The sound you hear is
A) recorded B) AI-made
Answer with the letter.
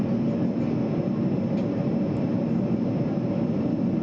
A